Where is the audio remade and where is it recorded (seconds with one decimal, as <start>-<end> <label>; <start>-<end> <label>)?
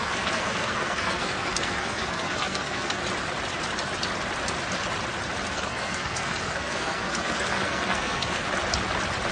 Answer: 0.0-3.0 remade; 3.0-5.5 recorded; 5.5-8.4 remade; 8.4-9.3 recorded